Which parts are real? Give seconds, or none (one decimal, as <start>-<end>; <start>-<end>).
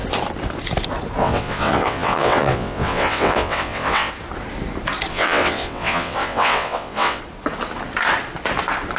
0.0-1.2; 4.1-5.1; 7.2-9.0